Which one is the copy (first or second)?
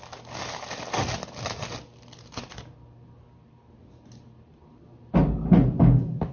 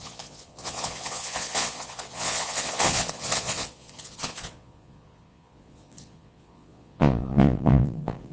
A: second